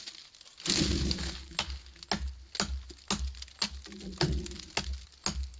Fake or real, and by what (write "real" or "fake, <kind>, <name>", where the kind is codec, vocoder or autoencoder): real